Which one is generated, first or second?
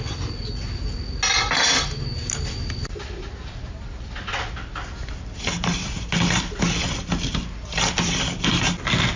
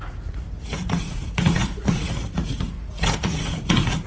second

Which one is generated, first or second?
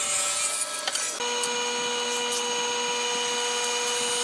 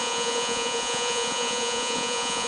second